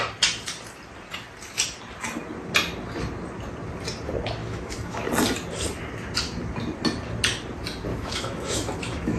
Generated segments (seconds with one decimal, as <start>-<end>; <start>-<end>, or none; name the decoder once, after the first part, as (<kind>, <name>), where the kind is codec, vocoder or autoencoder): 4.4-5.0 (autoencoder, DAC-VAE); 7.9-9.2